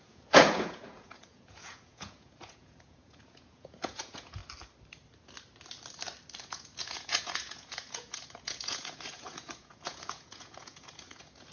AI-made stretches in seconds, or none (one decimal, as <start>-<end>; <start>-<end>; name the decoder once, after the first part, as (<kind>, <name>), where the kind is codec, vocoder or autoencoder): 0.0-4.4 (vocoder, Vocos); 6.4-11.5